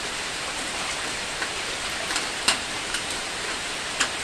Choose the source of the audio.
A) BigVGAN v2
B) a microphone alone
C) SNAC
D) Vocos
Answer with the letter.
A